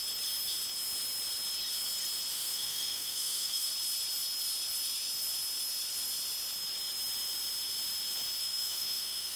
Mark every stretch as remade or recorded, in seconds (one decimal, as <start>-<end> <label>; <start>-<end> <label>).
0.0-2.3 recorded; 2.3-3.7 remade; 3.7-8.4 recorded; 8.4-9.4 remade